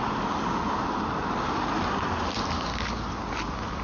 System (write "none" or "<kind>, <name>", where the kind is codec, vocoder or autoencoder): none